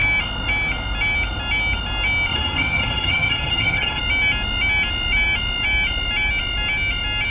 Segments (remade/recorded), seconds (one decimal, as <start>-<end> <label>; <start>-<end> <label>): 0.0-2.3 recorded; 2.3-4.0 remade; 4.0-7.3 recorded